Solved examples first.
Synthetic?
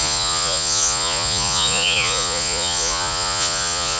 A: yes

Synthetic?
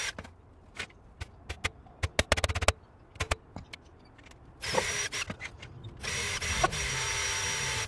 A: no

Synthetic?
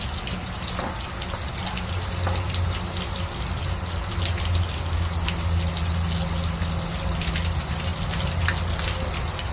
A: no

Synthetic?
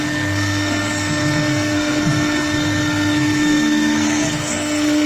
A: yes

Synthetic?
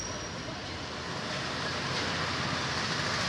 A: no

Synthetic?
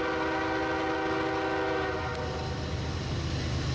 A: no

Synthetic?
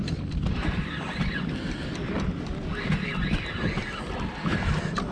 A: no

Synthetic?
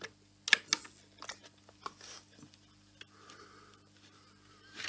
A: no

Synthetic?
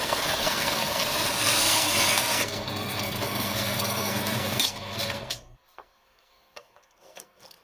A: yes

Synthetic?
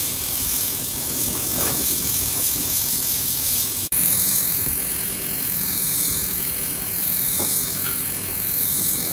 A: yes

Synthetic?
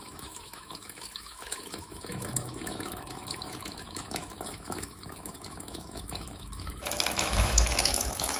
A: yes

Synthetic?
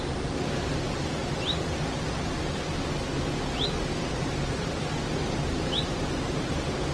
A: no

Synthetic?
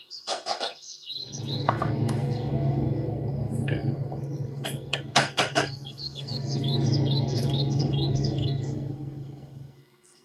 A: yes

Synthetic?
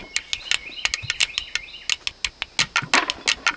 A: no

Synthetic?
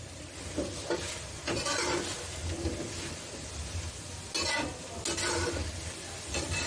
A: no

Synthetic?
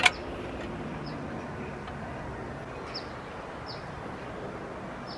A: no